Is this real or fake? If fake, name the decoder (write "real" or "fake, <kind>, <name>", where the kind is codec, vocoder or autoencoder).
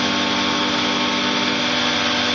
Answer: real